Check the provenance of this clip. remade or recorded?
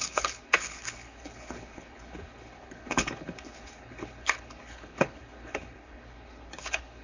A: remade